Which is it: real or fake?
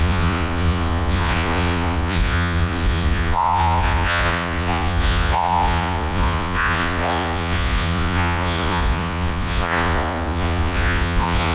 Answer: fake